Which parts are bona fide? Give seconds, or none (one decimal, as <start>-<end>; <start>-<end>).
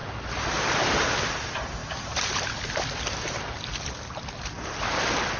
0.0-1.8; 5.0-5.4